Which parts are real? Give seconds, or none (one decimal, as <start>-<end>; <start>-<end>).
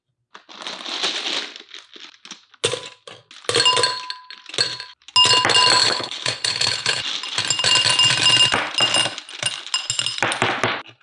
0.0-5.8; 7.0-11.0